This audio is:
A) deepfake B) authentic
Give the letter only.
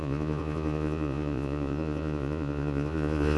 A